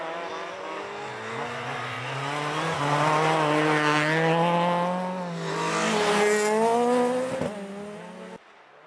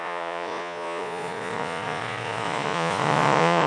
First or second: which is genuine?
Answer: first